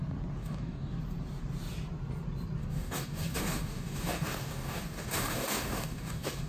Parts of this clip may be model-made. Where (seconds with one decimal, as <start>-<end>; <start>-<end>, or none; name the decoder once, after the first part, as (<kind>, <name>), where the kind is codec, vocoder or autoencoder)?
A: 0.4-1.0 (codec, DAC); 2.6-6.5